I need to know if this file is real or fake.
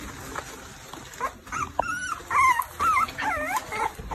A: real